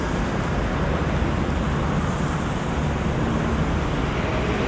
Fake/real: real